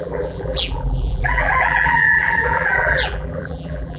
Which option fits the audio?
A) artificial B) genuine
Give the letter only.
A